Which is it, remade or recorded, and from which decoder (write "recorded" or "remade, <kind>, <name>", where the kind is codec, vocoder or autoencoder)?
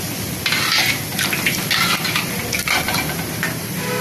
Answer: recorded